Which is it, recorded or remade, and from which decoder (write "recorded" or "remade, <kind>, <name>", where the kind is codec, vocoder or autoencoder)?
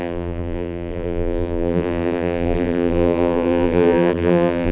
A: remade, vocoder, BigVGAN v2